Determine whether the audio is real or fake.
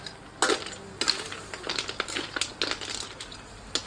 real